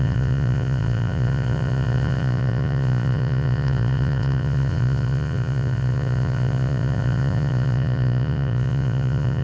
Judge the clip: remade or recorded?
remade